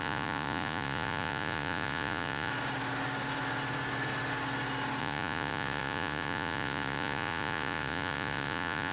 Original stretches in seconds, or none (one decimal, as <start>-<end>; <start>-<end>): 2.5-5.0